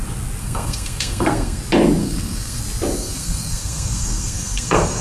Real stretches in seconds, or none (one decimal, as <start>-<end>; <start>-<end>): 0.0-0.4; 1.6-2.0; 2.6-3.0